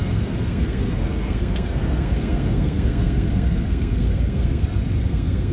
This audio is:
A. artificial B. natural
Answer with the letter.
A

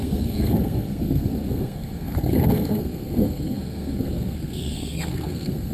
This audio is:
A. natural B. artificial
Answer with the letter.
B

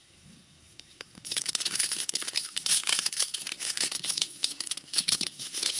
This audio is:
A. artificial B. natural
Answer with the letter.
A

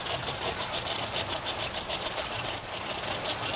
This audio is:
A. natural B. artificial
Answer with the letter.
A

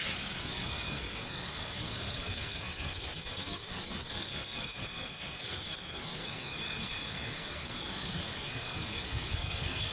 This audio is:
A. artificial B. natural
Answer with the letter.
A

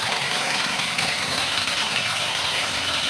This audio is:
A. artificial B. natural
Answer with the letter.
A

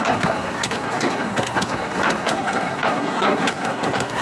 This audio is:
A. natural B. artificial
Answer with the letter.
B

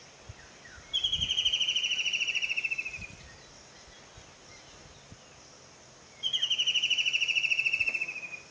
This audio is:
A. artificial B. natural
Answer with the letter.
B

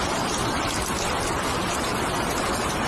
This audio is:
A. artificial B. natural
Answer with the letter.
B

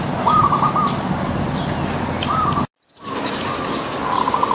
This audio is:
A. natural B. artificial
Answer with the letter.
A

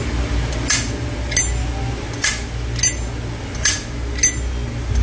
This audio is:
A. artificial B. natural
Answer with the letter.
B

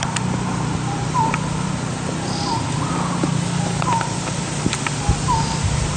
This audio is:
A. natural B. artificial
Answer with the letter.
A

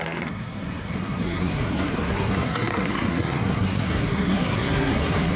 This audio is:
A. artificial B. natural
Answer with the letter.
A